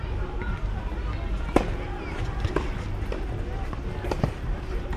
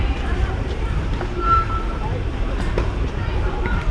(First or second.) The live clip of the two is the first